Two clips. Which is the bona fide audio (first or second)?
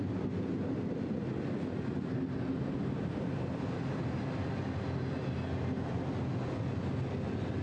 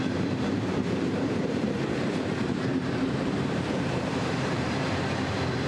first